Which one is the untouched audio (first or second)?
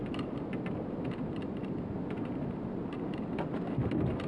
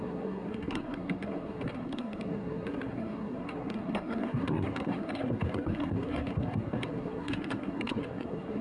first